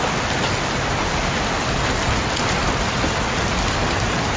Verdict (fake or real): real